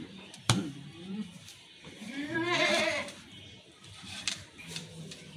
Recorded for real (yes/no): no